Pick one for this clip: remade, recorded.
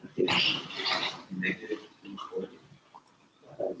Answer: recorded